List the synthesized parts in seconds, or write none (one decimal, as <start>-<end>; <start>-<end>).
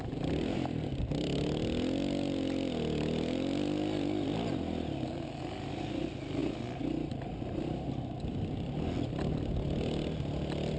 none